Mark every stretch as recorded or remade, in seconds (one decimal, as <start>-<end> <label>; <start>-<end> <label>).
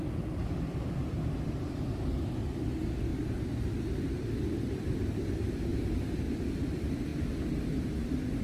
0.0-3.1 recorded; 3.1-4.2 remade; 4.2-5.7 recorded; 5.7-6.2 remade; 6.2-8.4 recorded